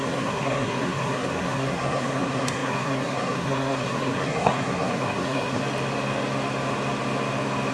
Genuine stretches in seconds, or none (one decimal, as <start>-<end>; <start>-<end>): 5.6-7.7

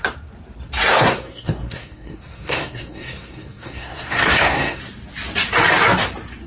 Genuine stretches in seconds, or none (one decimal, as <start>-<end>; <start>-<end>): 0.0-0.9; 4.8-6.5

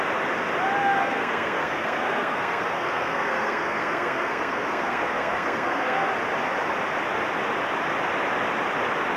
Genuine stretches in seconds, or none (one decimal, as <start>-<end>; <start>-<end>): 0.0-0.8; 6.1-9.2

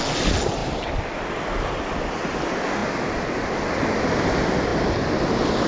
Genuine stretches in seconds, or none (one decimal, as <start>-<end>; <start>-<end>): 0.0-5.7

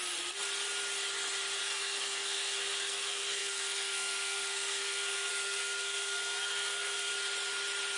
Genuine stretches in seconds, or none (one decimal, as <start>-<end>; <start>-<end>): 0.0-1.6; 7.1-8.0

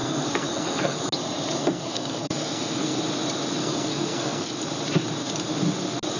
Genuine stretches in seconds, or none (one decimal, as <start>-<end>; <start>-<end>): 1.0-1.6; 3.0-3.6; 4.5-6.2

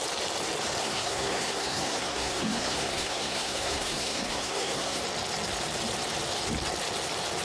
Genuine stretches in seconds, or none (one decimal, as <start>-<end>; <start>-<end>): 0.0-0.8; 5.0-7.4